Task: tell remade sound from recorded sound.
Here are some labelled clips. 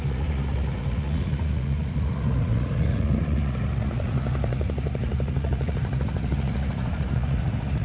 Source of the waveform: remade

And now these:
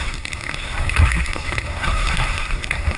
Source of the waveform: remade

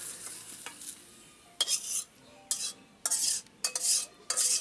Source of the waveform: recorded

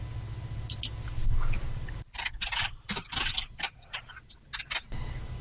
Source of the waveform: recorded